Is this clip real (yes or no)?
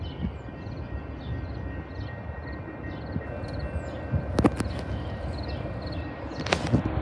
yes